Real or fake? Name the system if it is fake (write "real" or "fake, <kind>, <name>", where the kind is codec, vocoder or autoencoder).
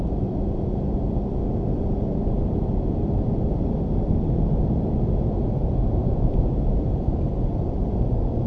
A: real